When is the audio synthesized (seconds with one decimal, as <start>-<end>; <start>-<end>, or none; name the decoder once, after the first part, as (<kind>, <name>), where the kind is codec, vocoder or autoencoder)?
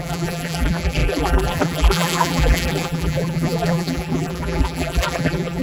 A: 0.0-5.6 (vocoder, BigVGAN v2)